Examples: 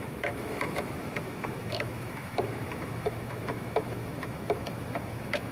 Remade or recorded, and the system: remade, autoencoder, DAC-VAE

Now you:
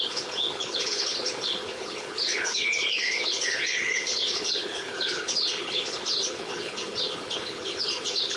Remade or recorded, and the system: remade, codec, HILCodec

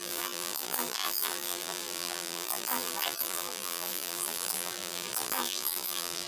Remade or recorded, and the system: remade, vocoder, BigVGAN v2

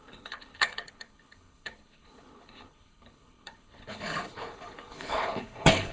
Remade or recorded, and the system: remade, codec, HILCodec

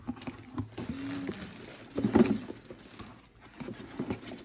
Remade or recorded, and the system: recorded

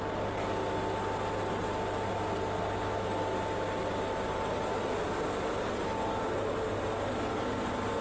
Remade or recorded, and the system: recorded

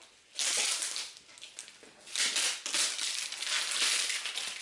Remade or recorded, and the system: recorded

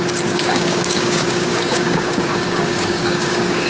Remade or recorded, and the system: remade, codec, DAC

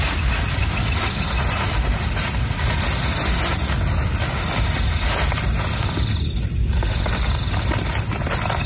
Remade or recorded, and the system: recorded